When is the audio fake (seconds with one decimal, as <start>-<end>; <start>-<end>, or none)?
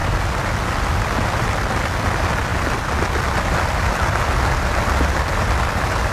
0.6-2.5; 3.7-6.1